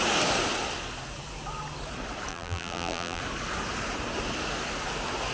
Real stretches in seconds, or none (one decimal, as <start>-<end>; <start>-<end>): 0.0-2.3; 3.2-5.3